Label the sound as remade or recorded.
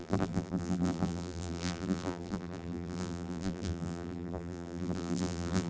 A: remade